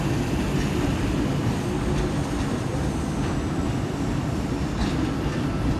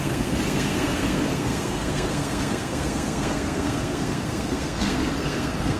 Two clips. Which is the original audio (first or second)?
first